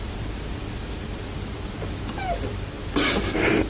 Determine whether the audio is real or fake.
fake